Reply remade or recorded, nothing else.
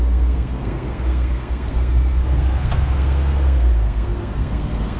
remade